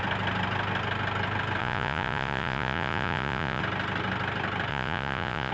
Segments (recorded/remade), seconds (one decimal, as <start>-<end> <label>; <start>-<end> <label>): 0.0-1.6 recorded; 1.6-3.6 remade; 3.6-4.7 recorded; 4.7-5.5 remade